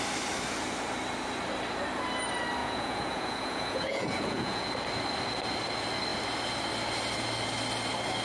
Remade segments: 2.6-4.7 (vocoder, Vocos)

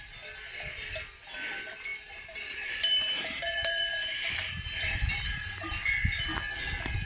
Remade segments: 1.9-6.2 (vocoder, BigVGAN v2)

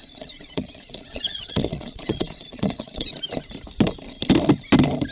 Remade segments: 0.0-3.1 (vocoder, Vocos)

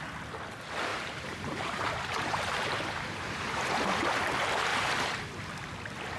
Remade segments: 0.9-4.2 (vocoder, BigVGAN v2); 4.7-5.3